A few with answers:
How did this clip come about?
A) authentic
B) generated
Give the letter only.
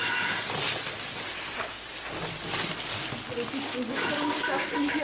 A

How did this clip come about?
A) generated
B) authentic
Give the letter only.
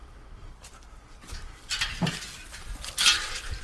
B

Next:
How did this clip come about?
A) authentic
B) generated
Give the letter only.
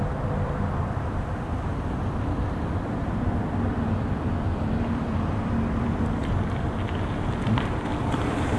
B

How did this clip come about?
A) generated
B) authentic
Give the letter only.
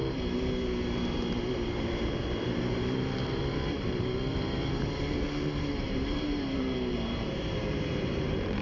A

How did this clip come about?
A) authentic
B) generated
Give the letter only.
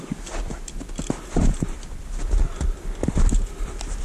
B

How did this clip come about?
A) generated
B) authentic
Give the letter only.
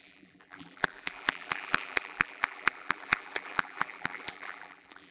A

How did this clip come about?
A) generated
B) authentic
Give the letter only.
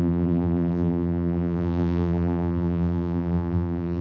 A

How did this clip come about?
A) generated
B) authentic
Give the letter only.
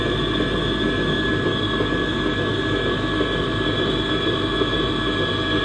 B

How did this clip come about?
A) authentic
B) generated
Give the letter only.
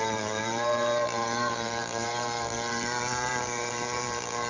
B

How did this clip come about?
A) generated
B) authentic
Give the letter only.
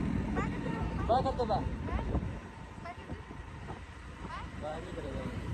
A